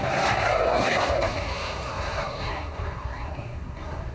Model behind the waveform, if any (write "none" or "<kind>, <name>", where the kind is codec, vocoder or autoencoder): codec, SNAC